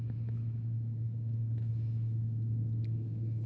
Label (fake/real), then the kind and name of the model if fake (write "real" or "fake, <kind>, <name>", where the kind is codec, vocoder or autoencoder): fake, autoencoder, DAC-VAE